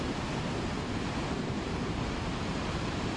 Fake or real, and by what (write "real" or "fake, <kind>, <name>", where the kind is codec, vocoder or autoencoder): fake, vocoder, BigVGAN v2